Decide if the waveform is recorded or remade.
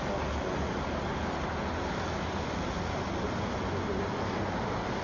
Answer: recorded